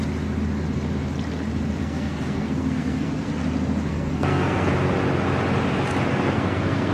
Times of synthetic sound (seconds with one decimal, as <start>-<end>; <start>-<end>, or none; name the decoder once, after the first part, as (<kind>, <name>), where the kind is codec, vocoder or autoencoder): 1.8-3.3 (codec, SNAC); 3.9-4.7; 6.1-6.9